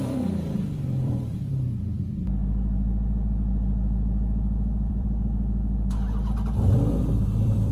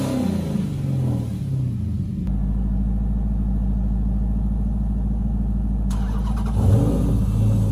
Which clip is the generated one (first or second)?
first